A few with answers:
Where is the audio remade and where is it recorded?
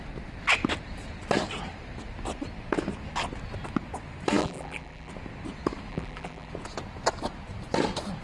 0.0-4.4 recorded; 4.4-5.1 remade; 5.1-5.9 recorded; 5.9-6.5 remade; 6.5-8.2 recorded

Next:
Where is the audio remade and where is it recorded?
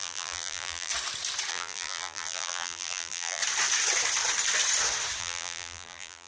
0.0-0.9 remade; 0.9-1.5 recorded; 1.5-3.4 remade; 3.4-5.2 recorded; 5.2-6.3 remade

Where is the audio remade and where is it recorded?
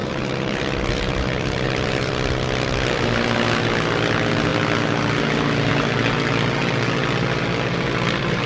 0.0-2.1 remade; 2.1-8.5 recorded